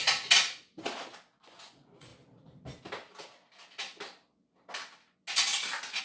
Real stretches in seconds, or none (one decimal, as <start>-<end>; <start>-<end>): 0.0-1.4; 2.1-6.0